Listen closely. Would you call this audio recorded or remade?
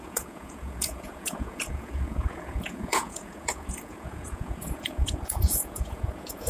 remade